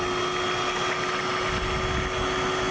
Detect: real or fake real